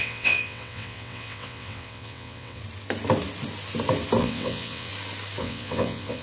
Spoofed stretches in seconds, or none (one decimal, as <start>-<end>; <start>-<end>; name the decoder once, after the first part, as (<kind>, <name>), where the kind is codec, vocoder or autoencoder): 0.0-2.6 (vocoder, WaveNeXt); 4.2-4.9; 5.4-6.2